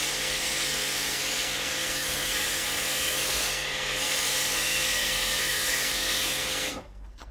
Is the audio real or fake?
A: fake